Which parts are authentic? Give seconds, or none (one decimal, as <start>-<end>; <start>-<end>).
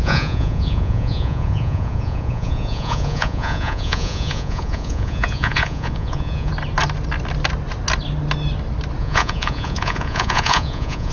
6.5-9.0